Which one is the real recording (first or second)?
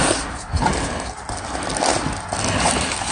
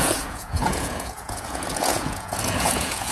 first